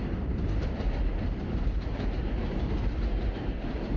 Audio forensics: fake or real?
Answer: fake